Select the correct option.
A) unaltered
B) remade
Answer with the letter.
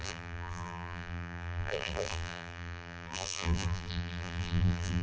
B